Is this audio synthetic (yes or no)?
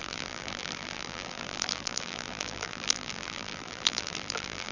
yes